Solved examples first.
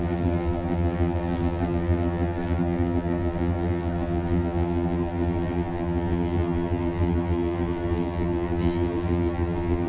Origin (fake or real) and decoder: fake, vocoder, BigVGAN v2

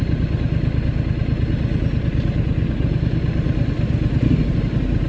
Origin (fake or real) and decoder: real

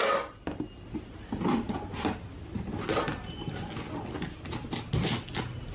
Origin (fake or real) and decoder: real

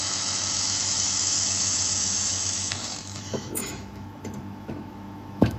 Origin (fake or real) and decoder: fake, autoencoder, DAC-VAE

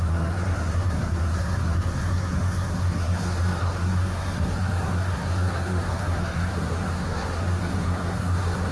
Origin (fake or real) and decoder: fake, codec, SNAC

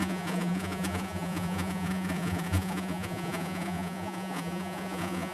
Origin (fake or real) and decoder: fake, vocoder, Vocos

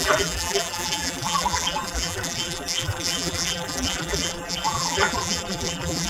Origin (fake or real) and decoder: fake, vocoder, BigVGAN v2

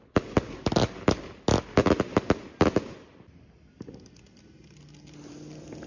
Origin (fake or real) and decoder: real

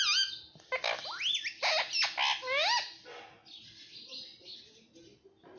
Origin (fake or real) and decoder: real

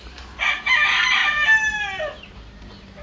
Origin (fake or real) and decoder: real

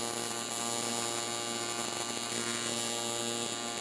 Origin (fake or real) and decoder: real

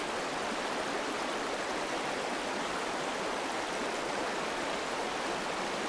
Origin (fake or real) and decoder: real